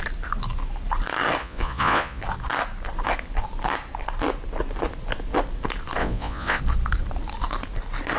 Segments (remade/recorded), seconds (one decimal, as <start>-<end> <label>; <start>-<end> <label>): 0.0-1.4 recorded; 1.4-2.2 remade; 2.2-6.0 recorded; 6.0-6.6 remade; 6.6-8.2 recorded